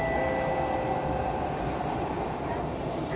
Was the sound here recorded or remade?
recorded